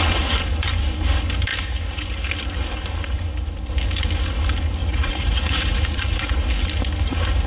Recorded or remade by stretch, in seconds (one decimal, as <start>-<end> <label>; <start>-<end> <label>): 0.0-4.8 recorded; 4.8-6.3 remade; 6.3-7.5 recorded